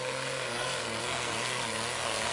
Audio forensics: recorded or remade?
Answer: remade